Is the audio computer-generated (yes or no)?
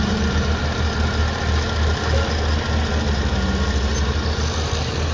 no